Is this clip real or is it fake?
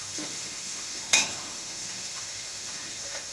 fake